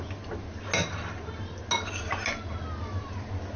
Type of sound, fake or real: real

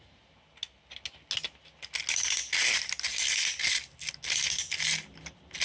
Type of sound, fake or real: real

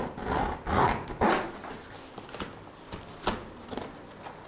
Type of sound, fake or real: real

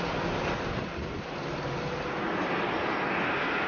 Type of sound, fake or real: real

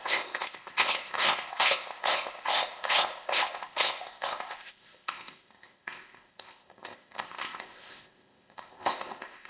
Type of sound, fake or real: fake